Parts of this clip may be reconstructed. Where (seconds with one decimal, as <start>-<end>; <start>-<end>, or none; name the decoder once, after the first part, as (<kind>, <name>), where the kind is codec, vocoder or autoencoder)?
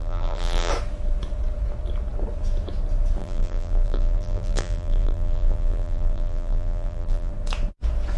0.0-0.7 (vocoder, BigVGAN v2); 3.2-7.3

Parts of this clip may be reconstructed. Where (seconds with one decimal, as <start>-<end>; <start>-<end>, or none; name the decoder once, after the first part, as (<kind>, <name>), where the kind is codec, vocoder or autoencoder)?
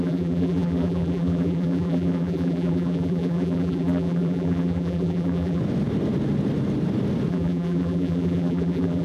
0.0-5.6 (vocoder, BigVGAN v2); 7.3-9.0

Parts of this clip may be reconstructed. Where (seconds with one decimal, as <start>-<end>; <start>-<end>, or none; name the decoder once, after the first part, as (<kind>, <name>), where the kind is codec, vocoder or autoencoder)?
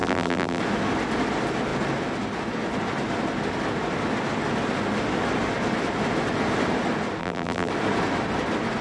0.0-0.6 (vocoder, BigVGAN v2); 7.2-7.7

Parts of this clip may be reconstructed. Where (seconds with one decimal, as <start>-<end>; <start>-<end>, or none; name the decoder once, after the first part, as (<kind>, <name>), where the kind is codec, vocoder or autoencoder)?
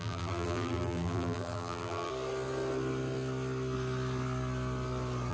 0.0-2.1 (vocoder, BigVGAN v2)